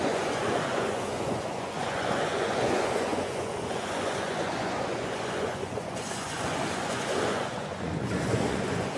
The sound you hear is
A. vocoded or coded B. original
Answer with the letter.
A